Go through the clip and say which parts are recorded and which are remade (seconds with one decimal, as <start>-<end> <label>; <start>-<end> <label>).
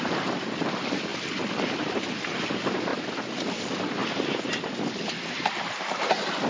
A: 0.0-1.1 remade; 1.1-2.1 recorded; 2.1-2.9 remade; 2.9-3.6 recorded; 3.6-4.0 remade; 4.0-5.3 recorded; 5.3-6.5 remade